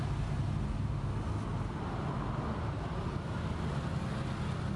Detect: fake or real real